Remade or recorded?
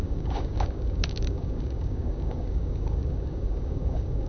remade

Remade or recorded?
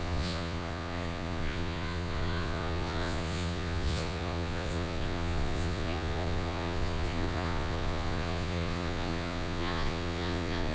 remade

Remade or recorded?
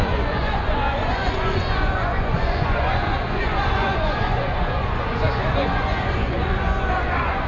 remade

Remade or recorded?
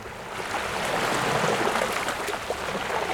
recorded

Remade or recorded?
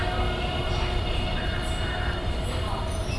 recorded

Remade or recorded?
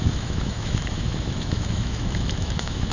remade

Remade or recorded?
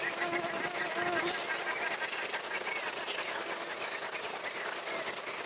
recorded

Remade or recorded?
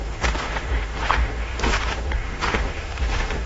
remade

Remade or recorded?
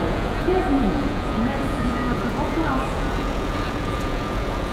remade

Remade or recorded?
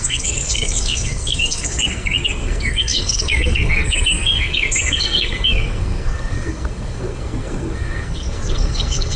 remade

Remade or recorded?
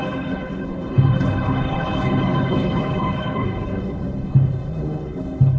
remade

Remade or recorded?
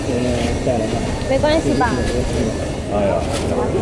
recorded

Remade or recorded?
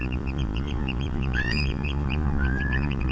remade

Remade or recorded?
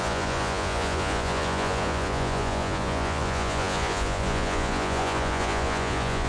remade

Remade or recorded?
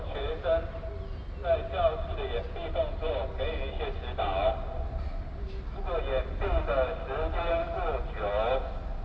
recorded